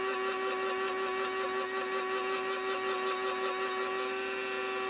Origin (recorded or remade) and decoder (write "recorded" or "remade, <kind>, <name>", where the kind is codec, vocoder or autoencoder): recorded